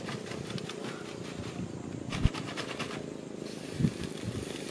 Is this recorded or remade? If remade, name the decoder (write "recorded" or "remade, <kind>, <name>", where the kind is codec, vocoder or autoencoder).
recorded